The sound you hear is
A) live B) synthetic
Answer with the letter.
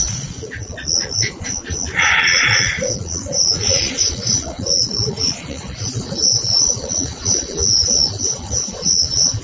B